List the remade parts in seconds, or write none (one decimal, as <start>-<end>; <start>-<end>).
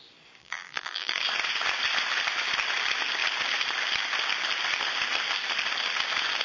0.4-1.2